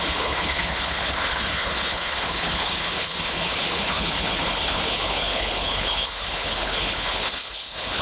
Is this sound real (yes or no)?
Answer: no